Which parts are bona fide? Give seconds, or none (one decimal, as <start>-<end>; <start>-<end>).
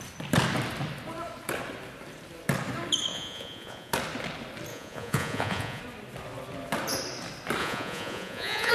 0.0-3.1; 3.9-4.7; 5.8-7.6